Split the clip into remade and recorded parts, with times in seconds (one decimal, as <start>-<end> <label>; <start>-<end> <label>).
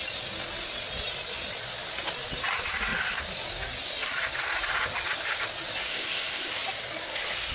0.0-5.9 recorded; 5.9-6.5 remade; 6.5-7.5 recorded